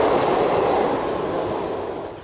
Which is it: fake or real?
real